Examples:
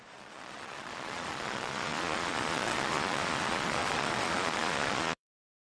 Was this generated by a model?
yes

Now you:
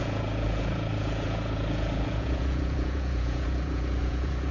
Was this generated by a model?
yes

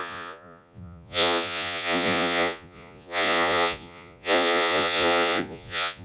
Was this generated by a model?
yes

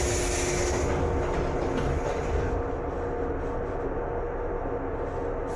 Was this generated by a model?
no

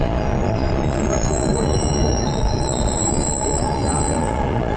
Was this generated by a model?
yes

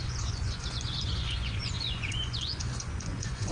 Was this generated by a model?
yes